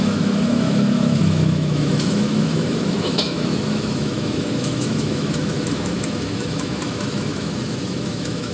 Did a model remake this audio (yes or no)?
yes